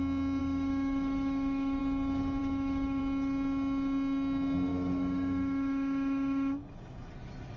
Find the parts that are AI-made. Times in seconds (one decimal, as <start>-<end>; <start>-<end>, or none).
0.4-1.8; 2.4-3.0; 4.7-7.1